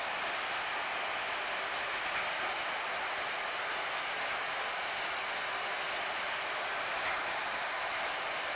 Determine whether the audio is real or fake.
real